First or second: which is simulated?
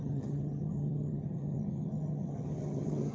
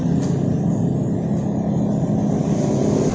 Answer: first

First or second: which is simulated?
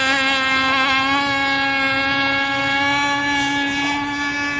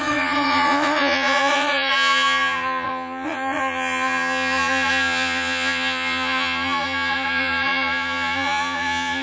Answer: second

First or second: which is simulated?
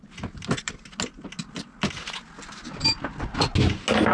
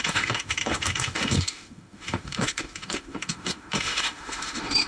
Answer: second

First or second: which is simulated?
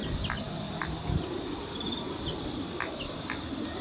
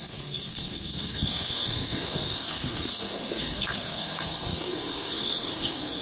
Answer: second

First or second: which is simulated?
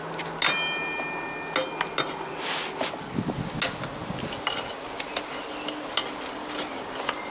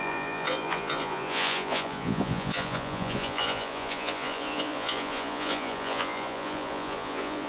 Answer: second